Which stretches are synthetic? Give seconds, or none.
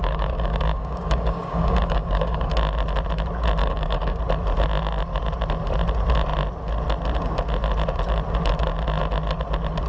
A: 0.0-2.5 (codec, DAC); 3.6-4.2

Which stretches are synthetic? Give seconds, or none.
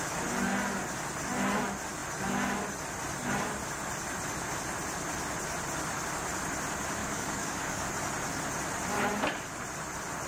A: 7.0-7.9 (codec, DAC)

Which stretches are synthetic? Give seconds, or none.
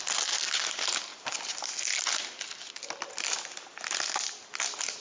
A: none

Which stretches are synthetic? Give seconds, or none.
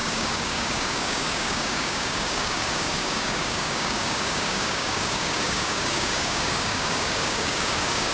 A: 0.0-8.1 (codec, DAC)